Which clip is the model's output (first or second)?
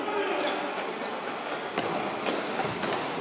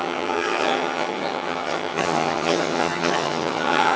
second